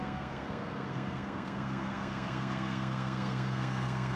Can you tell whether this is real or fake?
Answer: fake